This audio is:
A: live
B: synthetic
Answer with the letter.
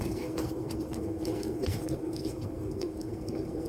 B